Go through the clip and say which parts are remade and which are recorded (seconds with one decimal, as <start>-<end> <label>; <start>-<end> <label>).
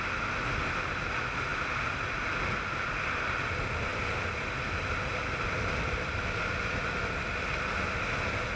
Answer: 0.0-1.5 recorded; 1.5-3.5 remade; 3.5-8.6 recorded